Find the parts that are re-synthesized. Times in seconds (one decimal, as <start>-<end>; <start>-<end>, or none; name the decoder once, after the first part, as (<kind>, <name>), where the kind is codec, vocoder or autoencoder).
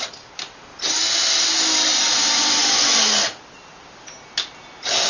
none